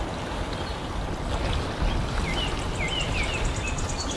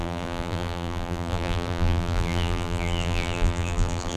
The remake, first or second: second